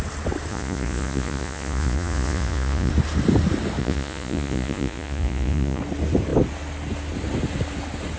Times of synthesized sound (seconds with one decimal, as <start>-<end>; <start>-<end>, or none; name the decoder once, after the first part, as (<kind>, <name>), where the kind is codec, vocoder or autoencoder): 0.5-2.9 (vocoder, Vocos); 3.8-5.8